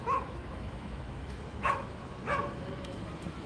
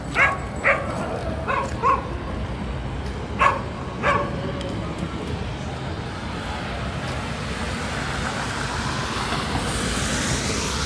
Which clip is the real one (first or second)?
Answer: second